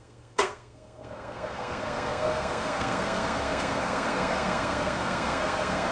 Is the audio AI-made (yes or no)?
yes